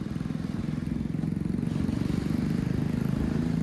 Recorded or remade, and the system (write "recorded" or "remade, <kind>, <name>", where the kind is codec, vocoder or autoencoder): recorded